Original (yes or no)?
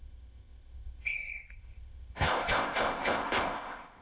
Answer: no